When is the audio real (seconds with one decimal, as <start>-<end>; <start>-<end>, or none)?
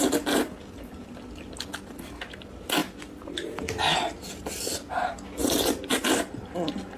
0.0-2.8; 4.3-5.4; 6.1-7.0